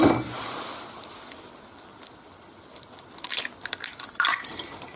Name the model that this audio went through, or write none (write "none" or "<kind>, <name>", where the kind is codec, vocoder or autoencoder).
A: vocoder, BigVGAN v2